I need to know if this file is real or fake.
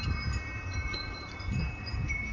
fake